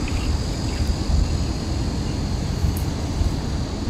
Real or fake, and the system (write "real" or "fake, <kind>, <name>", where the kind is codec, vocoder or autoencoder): real